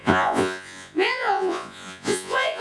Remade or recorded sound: remade